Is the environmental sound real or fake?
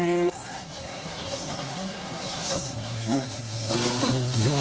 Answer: fake